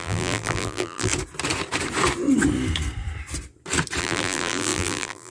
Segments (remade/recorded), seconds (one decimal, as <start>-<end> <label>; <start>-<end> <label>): 0.0-1.1 remade; 1.1-4.0 recorded; 4.0-5.3 remade